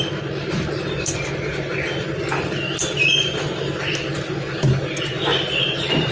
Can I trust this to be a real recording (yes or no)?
no